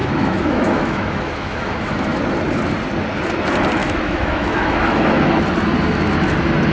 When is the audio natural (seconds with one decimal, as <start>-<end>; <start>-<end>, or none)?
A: 2.2-3.8; 5.3-6.7